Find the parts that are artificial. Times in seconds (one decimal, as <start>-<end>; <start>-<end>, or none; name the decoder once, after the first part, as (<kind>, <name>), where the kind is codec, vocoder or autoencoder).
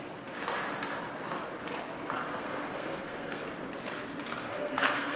2.3-3.4 (codec, SNAC); 4.4-5.2